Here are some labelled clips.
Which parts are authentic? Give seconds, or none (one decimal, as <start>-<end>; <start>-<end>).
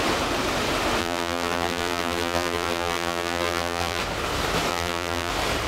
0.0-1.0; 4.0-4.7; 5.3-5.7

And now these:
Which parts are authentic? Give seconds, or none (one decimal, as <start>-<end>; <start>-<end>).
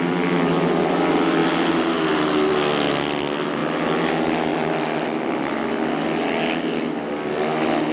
0.0-3.6; 4.1-4.5; 5.9-7.9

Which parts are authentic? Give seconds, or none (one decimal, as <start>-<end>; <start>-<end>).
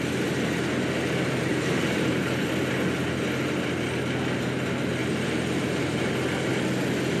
0.0-1.5; 2.6-5.0; 6.1-7.2